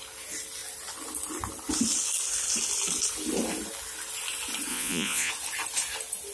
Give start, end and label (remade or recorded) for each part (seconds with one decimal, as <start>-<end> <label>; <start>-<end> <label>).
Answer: 0.0-4.7 recorded; 4.7-5.3 remade; 5.3-6.3 recorded